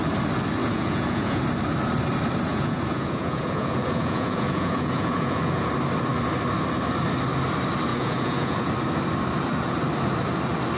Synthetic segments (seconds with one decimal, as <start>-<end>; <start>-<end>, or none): 0.6-1.4; 2.5-5.7; 7.9-8.7